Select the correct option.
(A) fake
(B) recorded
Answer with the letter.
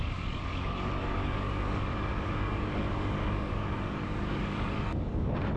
A